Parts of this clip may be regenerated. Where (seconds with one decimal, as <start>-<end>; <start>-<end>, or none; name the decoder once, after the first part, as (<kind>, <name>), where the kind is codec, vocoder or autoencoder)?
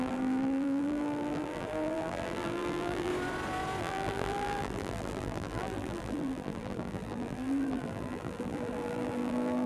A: 0.0-3.1 (vocoder, BigVGAN v2); 3.8-9.7